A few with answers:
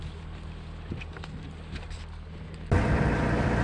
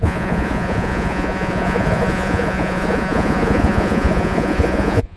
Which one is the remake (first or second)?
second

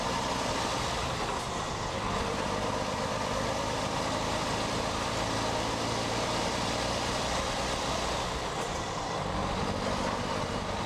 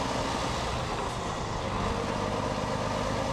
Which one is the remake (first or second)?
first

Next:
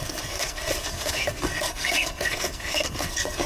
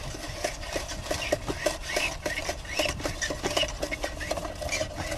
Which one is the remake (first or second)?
first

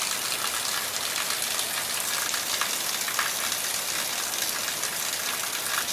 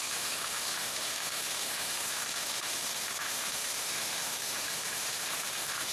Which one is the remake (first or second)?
second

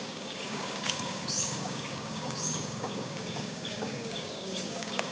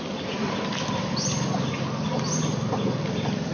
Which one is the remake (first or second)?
first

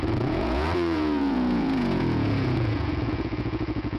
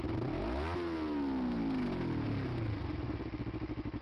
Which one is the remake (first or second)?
first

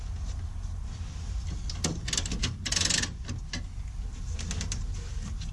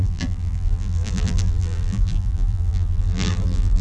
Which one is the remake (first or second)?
second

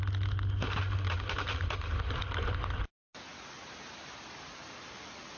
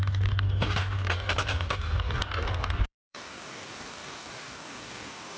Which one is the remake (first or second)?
second